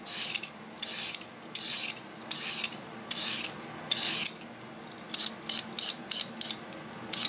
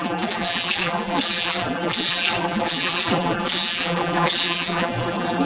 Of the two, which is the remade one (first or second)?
second